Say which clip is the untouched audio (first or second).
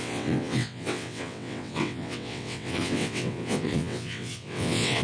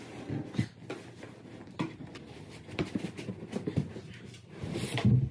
second